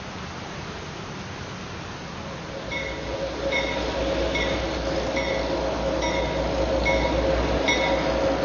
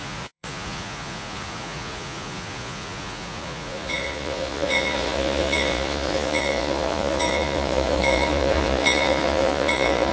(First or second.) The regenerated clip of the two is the second